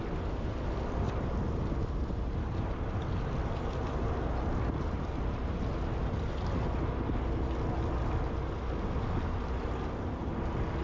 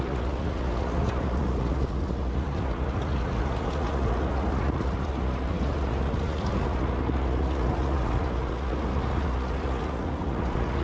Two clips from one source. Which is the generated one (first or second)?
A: second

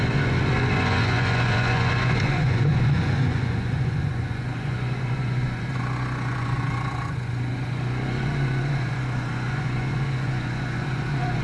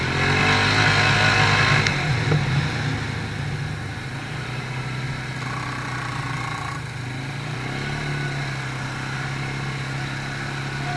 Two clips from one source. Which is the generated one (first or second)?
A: first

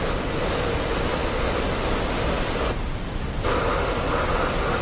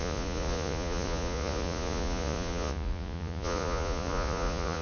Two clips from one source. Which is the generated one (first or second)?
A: second